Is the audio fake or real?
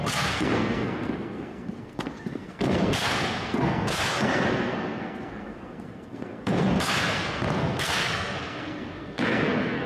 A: fake